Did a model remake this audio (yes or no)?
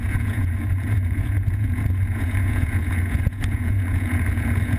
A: yes